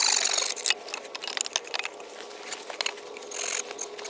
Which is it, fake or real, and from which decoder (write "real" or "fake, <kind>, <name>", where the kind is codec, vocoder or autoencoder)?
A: real